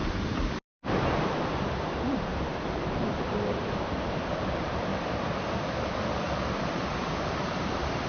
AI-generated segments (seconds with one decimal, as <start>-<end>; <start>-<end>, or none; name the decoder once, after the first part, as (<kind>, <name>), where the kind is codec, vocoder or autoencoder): 0.0-4.9 (vocoder, BigVGAN v2); 6.5-8.1